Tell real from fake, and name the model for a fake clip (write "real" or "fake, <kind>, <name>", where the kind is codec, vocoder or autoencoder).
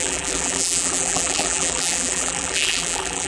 fake, vocoder, BigVGAN v2